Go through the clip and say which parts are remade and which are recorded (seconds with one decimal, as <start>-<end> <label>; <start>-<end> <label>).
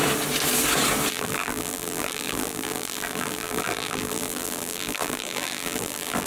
0.0-1.1 recorded; 1.1-6.3 remade